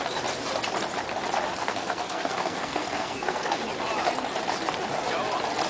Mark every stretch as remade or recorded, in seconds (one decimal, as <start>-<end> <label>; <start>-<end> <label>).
0.0-1.6 recorded; 1.6-3.6 remade; 3.6-5.7 recorded